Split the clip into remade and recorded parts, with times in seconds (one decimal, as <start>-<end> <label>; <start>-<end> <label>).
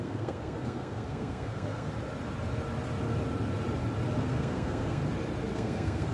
0.0-1.9 remade; 1.9-4.2 recorded; 4.2-5.0 remade; 5.0-5.5 recorded; 5.5-6.1 remade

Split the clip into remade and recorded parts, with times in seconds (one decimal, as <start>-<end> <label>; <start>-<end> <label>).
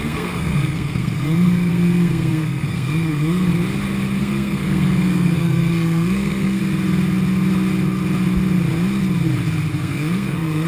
0.0-3.5 remade; 3.5-4.2 recorded; 4.2-6.6 remade; 6.6-9.7 recorded; 9.7-10.7 remade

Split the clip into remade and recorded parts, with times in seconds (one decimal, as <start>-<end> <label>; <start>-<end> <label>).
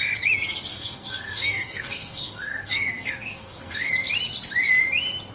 0.0-0.7 recorded; 0.7-3.9 remade; 3.9-5.3 recorded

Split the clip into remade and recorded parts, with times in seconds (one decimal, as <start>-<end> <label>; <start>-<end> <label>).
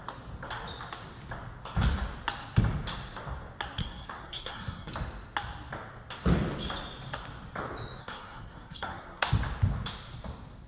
0.0-3.8 recorded; 3.8-4.9 remade; 4.9-8.0 recorded; 8.0-9.3 remade; 9.3-10.7 recorded